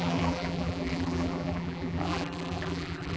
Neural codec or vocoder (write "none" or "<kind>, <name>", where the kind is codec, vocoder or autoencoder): vocoder, BigVGAN v2